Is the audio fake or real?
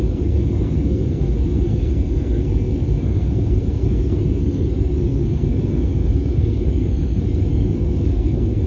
fake